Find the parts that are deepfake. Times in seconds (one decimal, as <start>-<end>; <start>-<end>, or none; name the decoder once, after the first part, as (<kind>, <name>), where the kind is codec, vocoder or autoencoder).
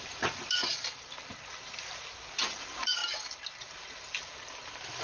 0.0-0.6 (vocoder, BigVGAN v2); 1.4-3.0; 3.6-5.0